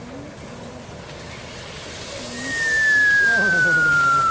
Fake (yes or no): no